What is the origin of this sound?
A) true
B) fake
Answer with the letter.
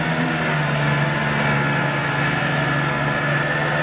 A